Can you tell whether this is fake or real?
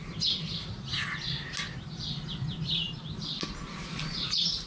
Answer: real